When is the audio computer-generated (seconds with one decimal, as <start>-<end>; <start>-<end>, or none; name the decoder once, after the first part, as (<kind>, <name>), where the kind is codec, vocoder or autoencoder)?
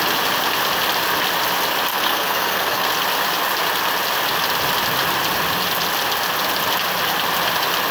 1.9-2.9 (codec, SNAC)